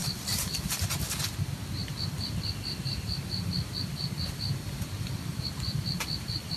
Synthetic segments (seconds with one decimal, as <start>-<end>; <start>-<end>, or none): 0.0-1.2